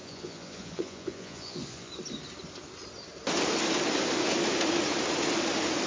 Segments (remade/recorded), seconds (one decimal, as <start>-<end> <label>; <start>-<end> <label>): 0.0-1.9 remade; 1.9-5.9 recorded